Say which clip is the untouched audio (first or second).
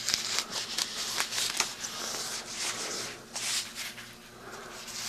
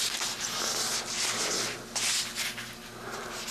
second